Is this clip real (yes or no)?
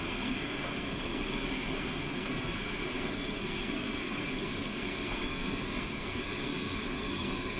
no